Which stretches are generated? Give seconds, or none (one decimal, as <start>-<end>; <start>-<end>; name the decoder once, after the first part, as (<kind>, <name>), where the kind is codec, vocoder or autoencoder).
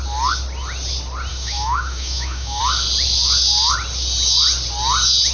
1.3-2.6 (autoencoder, DAC-VAE)